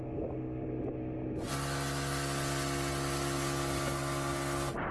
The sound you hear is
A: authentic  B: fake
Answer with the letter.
A